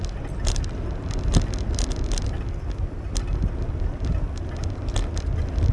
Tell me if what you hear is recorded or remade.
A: recorded